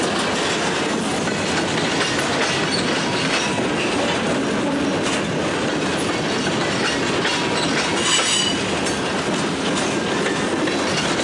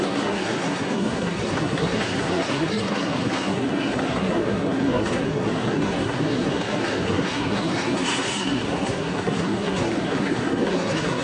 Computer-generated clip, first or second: second